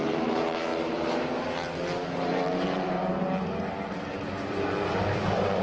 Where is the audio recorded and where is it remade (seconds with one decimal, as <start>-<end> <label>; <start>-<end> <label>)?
0.0-3.0 remade; 3.0-5.0 recorded; 5.0-5.6 remade